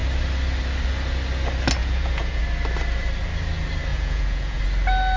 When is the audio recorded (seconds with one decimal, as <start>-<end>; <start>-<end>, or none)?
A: 0.0-1.8; 2.4-3.9; 4.6-5.2